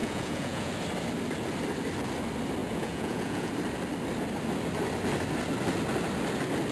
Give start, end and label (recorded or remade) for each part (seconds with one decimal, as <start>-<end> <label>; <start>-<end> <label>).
0.0-0.7 remade; 0.7-2.6 recorded; 2.6-3.5 remade; 3.5-6.7 recorded